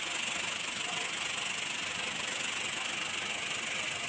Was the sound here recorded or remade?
recorded